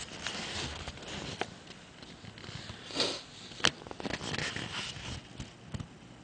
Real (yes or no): yes